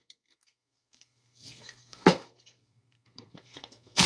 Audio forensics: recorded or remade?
remade